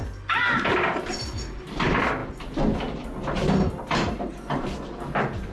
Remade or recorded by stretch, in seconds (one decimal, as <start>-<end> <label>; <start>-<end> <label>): 0.0-5.5 recorded